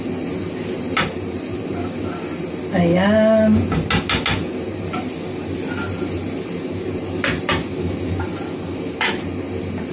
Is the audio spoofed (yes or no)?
no